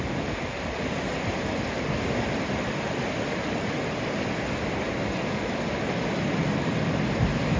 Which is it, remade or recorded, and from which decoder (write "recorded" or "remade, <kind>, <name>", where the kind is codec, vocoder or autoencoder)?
recorded